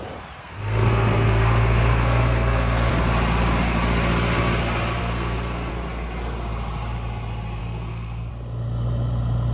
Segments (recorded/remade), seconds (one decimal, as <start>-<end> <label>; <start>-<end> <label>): 0.0-0.4 recorded; 0.4-2.9 remade; 2.9-5.0 recorded; 5.0-5.7 remade; 5.7-7.6 recorded; 7.6-8.3 remade; 8.3-9.5 recorded